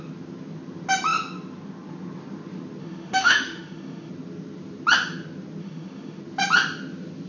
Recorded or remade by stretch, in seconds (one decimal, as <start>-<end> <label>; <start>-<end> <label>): 0.0-2.8 recorded; 2.8-4.1 remade; 4.1-5.6 recorded; 5.6-6.2 remade; 6.2-7.3 recorded